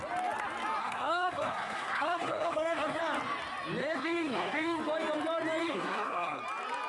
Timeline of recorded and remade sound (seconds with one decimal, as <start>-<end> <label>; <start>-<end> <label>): 0.0-0.8 recorded; 0.8-3.0 remade; 3.0-3.8 recorded; 3.8-4.8 remade; 4.8-5.6 recorded; 5.6-6.4 remade; 6.4-6.9 recorded